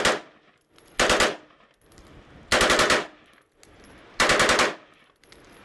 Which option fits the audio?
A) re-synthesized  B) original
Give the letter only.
B